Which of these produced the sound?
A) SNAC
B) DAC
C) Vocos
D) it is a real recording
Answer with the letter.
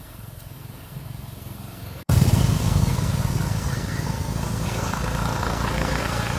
A